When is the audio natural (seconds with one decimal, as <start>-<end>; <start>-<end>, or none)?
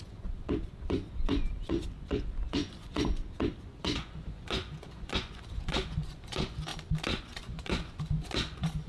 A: 6.7-7.2